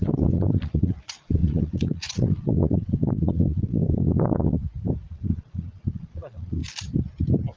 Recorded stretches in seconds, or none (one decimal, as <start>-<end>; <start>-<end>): 4.6-5.1; 6.6-7.6